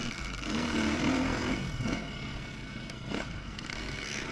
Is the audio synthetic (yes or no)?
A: yes